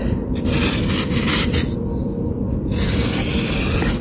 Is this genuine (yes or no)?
yes